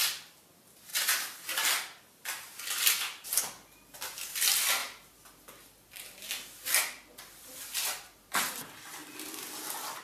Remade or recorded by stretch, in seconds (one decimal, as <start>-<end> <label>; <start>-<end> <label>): 0.0-10.0 recorded